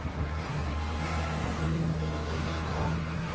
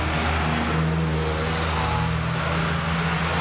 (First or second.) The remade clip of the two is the first